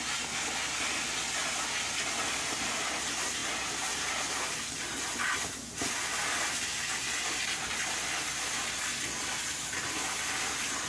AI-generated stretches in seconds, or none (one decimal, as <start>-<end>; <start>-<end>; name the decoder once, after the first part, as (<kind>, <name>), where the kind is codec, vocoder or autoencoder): none